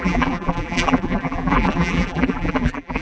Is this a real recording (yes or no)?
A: no